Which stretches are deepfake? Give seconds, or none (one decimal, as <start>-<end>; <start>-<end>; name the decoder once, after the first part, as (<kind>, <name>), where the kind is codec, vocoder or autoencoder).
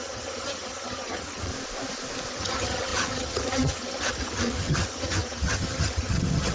0.0-1.5 (vocoder, HiFi-GAN); 2.3-6.5